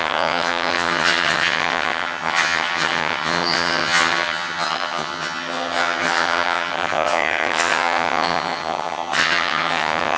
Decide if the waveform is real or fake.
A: fake